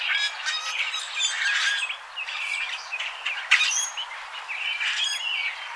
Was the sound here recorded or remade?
remade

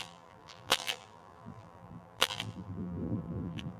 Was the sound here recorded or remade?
remade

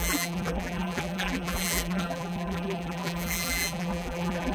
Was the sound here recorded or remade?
remade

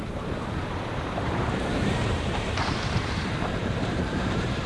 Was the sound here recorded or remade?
remade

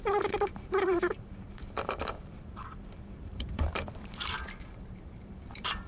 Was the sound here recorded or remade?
remade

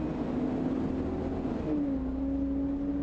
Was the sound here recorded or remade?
recorded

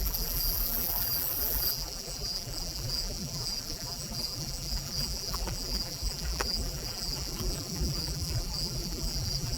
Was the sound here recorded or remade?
remade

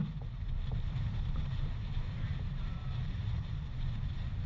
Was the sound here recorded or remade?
remade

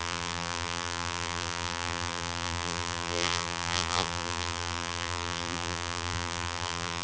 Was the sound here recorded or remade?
remade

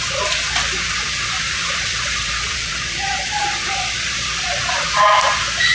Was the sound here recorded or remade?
remade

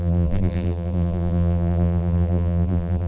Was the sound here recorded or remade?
remade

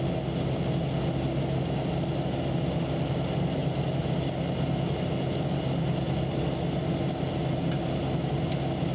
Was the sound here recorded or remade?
recorded